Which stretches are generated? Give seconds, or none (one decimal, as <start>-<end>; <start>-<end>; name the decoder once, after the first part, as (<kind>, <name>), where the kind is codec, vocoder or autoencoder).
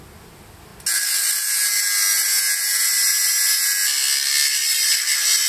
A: none